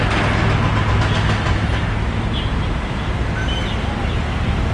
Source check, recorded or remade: recorded